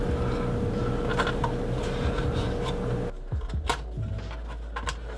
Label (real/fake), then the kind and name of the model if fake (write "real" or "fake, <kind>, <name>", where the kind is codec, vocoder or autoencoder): real